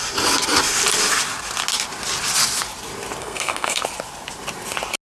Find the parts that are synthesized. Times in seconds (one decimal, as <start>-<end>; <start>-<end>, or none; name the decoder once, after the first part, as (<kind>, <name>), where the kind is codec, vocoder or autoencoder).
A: 3.2-3.8 (codec, SNAC)